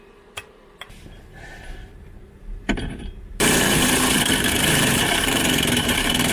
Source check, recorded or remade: remade